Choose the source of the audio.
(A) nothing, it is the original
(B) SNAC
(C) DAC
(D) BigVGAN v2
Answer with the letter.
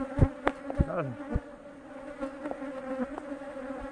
A